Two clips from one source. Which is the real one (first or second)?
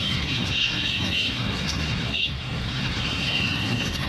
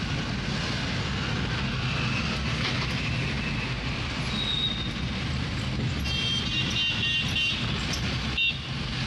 second